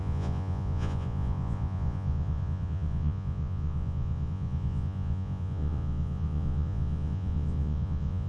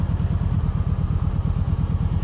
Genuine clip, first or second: second